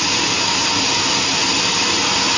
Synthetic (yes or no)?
no